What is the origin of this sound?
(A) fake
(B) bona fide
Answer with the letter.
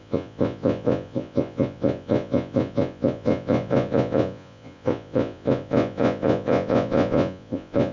A